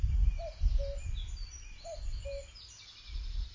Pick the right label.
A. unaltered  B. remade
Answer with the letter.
A